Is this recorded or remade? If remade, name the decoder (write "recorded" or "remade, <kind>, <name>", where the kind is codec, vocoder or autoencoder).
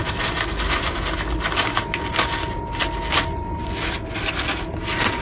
recorded